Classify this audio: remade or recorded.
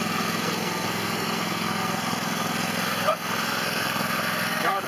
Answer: remade